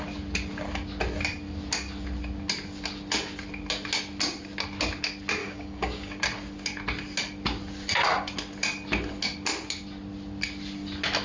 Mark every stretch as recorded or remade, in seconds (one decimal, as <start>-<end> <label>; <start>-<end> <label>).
0.0-5.4 recorded; 5.4-6.2 remade; 6.2-11.2 recorded